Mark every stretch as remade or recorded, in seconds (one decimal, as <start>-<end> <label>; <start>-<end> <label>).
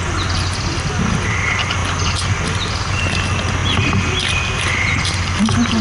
0.0-5.8 recorded